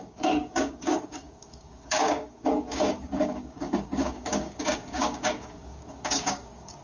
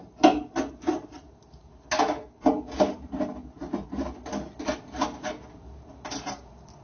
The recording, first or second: second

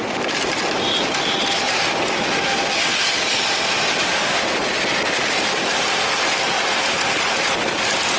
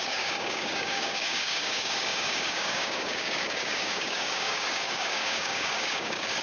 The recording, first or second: first